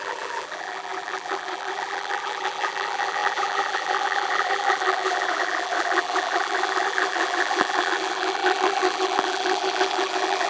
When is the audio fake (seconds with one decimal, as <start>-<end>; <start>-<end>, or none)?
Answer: 0.0-10.5